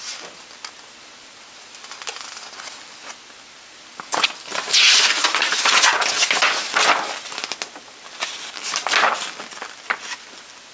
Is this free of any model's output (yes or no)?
yes